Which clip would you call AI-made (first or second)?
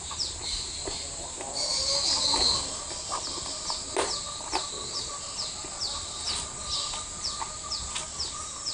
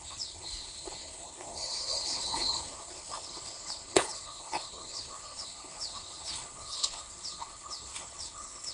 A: second